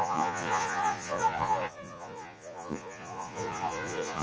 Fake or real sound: fake